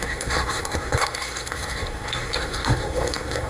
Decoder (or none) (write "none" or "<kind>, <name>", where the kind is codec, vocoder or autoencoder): codec, SNAC